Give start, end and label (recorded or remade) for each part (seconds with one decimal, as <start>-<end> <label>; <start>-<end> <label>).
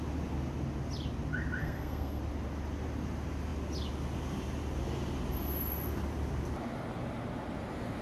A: 0.0-1.6 recorded; 1.6-2.2 remade; 2.2-8.0 recorded